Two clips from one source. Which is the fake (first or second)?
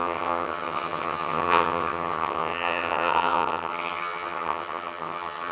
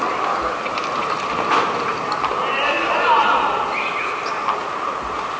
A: first